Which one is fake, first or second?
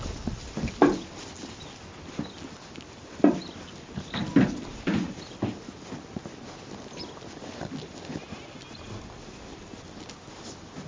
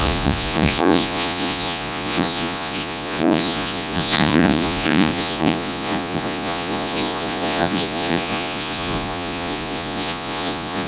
second